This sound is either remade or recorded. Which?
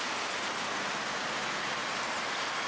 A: recorded